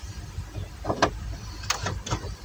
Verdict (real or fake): real